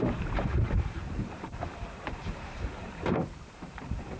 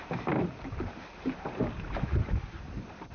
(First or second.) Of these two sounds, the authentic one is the second